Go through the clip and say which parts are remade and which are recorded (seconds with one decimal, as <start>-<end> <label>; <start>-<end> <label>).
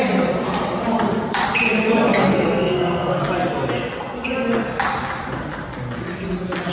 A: 0.0-2.3 recorded; 2.3-3.2 remade; 3.2-6.7 recorded